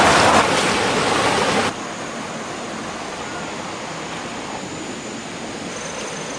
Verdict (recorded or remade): recorded